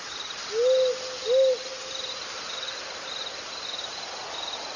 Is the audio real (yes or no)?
yes